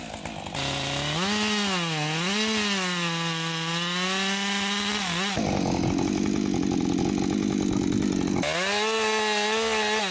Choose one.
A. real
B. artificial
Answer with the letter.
A